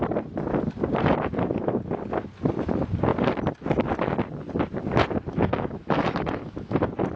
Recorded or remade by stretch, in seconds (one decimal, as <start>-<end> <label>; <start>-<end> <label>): 0.0-5.5 recorded; 5.5-6.7 remade; 6.7-7.2 recorded